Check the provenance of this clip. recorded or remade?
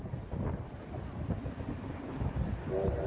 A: recorded